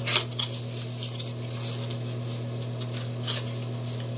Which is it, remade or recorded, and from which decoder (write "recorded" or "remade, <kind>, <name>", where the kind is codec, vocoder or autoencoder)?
recorded